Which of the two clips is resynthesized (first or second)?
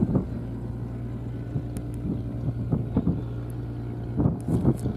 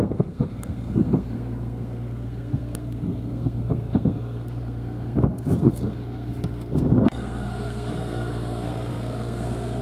second